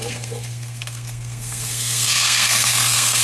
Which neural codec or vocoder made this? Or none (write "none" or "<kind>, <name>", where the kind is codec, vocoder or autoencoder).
codec, SNAC